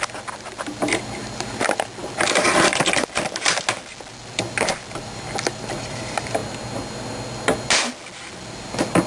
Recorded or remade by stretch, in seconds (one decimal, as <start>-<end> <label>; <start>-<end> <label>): 0.0-9.1 recorded